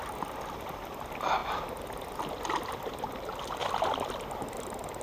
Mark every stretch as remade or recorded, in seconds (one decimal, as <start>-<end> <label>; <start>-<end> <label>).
0.0-5.0 recorded